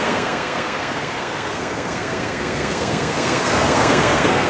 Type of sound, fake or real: fake